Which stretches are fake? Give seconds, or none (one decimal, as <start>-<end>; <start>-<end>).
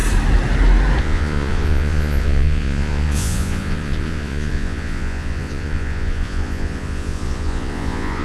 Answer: 1.0-8.2